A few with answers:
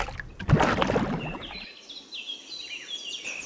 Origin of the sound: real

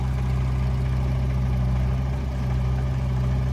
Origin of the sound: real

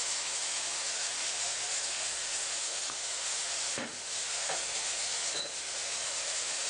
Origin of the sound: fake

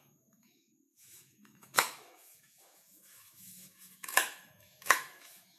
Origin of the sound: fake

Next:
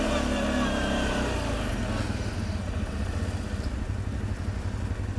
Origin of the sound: real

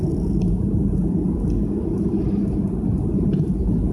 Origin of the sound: real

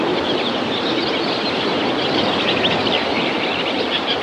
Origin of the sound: real